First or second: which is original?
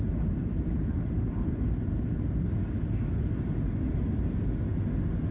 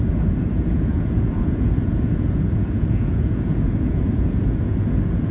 first